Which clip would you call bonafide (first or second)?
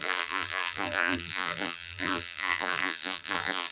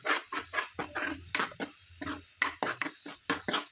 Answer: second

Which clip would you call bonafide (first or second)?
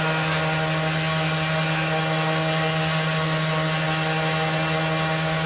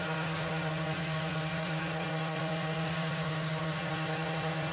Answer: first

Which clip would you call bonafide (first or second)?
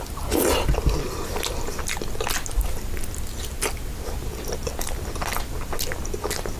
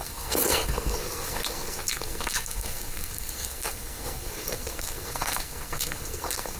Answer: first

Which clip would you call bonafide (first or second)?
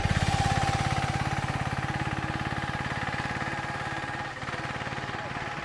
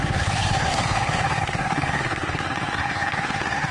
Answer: first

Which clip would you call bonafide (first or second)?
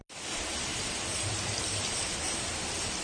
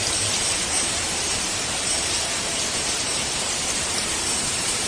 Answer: first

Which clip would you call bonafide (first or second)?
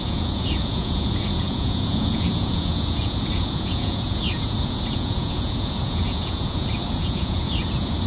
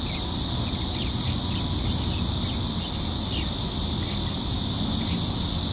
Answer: second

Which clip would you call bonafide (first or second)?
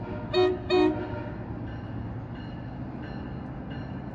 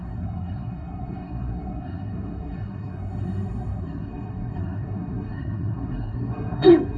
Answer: first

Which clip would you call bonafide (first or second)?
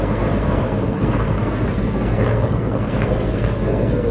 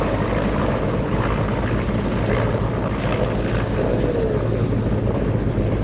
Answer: second